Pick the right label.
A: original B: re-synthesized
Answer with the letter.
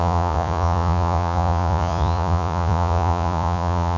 B